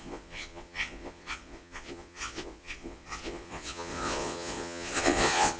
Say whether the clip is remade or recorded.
remade